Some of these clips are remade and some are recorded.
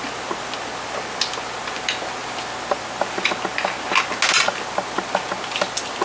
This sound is recorded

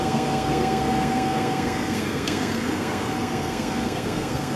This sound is remade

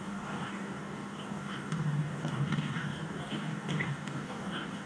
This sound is remade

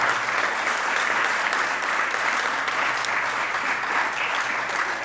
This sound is recorded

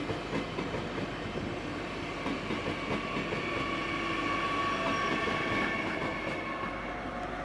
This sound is recorded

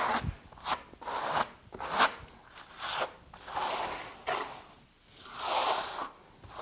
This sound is recorded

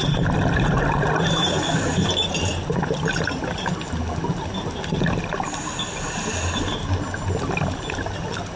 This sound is recorded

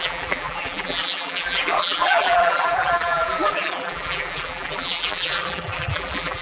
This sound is remade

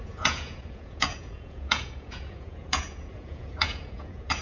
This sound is remade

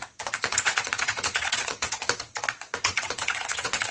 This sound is remade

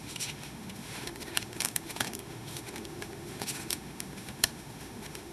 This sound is remade